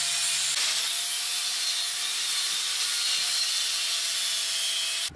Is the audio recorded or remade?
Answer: recorded